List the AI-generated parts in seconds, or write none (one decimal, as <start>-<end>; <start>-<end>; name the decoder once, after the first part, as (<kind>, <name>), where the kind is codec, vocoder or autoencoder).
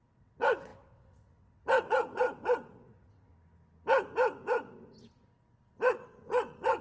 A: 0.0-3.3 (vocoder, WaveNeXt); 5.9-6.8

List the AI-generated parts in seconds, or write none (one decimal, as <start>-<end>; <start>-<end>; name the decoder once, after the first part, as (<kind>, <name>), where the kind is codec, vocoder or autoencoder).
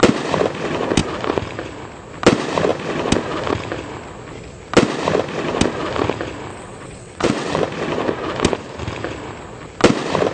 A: 6.5-7.6 (vocoder, WaveNeXt)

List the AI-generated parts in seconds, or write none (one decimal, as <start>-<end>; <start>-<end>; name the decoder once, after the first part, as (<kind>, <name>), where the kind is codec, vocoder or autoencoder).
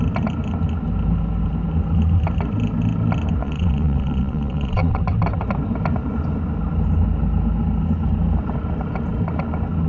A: 3.4-5.0 (vocoder, WaveNeXt)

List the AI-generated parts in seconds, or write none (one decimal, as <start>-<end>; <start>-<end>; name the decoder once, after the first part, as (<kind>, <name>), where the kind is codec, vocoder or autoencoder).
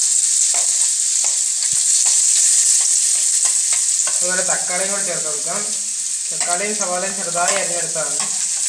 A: none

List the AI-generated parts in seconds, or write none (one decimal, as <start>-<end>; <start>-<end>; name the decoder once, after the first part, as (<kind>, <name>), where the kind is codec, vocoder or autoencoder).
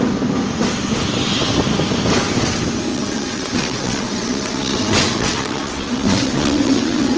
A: 2.9-7.2 (vocoder, WaveNeXt)